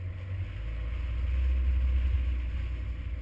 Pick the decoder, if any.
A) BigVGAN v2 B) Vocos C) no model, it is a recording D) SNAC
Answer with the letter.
C